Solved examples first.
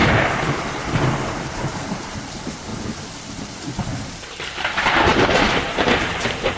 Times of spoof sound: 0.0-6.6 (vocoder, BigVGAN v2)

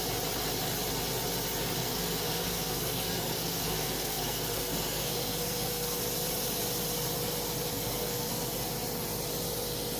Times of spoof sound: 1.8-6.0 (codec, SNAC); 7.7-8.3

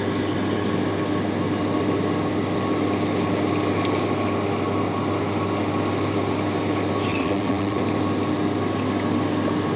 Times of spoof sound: 7.1-7.8 (vocoder, WaveNeXt)